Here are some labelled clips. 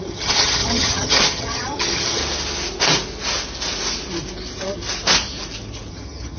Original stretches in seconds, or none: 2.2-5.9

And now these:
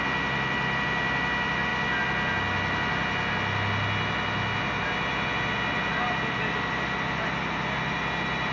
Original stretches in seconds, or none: 0.0-8.5

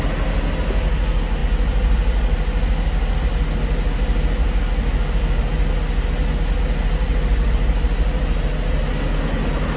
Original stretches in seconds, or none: 0.0-9.8